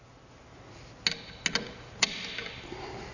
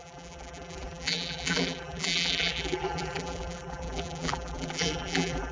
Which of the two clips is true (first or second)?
first